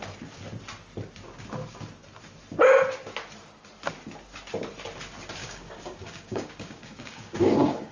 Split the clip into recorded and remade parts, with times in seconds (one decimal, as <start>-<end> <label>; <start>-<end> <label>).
0.0-5.4 recorded; 5.4-7.9 remade